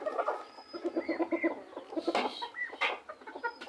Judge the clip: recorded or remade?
recorded